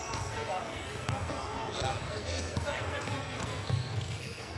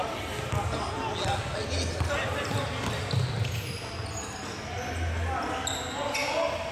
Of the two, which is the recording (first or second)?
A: second